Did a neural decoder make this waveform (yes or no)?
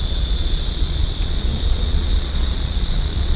yes